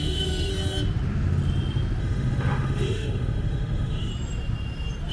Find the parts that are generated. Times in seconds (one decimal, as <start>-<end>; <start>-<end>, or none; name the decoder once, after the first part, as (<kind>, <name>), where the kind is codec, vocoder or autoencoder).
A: 0.0-0.5 (autoencoder, DAC-VAE); 2.0-4.1